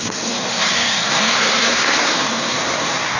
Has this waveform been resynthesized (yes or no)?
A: yes